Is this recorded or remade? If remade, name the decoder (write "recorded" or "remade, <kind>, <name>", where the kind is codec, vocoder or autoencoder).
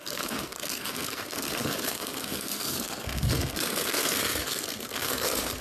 remade, codec, SNAC